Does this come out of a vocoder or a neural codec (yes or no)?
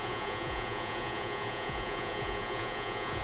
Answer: yes